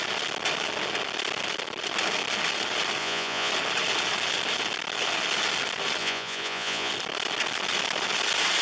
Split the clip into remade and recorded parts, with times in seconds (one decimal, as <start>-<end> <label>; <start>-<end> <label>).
0.0-3.0 recorded; 3.0-3.5 remade; 3.5-6.0 recorded; 6.0-6.9 remade; 6.9-8.6 recorded